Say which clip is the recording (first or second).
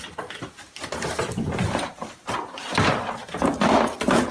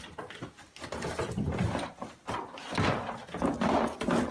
second